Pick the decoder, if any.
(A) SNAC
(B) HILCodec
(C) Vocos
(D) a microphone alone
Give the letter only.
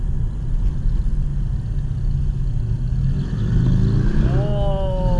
D